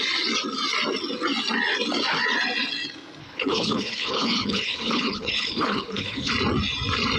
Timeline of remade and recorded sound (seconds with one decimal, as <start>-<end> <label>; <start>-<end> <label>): 0.0-3.2 recorded; 3.2-6.3 remade; 6.3-7.2 recorded